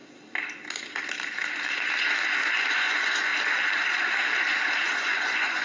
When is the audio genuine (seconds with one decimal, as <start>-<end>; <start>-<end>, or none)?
0.0-2.5; 3.3-5.0